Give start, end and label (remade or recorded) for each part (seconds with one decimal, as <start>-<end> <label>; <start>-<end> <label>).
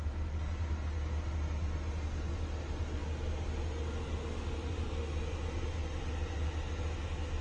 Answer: 0.0-7.4 recorded